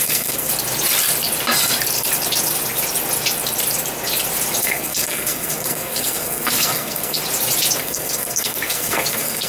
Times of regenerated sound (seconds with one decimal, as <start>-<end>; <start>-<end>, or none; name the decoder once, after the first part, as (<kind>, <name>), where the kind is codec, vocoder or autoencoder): 0.0-0.5 (codec, SNAC); 4.6-7.2; 7.8-9.5

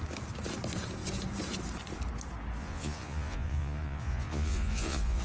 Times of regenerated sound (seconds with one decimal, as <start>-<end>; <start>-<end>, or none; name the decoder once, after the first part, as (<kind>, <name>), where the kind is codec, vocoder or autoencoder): 2.6-5.2 (vocoder, Vocos)

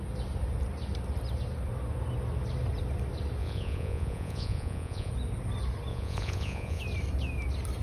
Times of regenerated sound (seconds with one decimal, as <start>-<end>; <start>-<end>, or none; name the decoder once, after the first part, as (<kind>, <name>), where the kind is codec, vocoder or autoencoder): 3.4-5.1 (vocoder, Vocos); 5.9-6.8

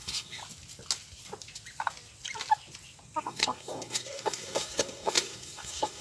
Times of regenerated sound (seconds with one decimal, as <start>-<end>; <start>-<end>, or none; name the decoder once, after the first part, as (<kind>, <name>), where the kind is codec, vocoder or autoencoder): 0.0-0.4 (codec, SNAC); 3.2-6.0

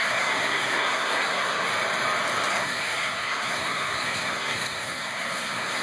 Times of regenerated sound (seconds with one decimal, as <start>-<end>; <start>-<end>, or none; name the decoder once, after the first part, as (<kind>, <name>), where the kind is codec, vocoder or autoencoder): 0.0-1.7 (codec, SNAC); 2.5-5.8

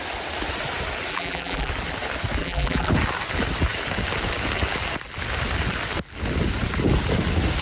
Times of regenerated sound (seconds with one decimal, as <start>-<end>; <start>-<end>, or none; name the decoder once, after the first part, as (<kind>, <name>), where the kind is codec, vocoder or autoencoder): 1.1-1.7 (vocoder, BigVGAN v2); 2.4-2.9